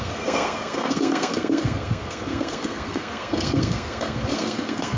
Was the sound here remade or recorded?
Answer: remade